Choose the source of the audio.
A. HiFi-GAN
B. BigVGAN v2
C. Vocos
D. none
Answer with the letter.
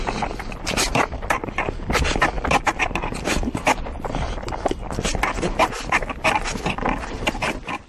D